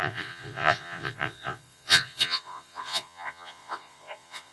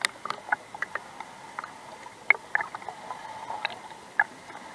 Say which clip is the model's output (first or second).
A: first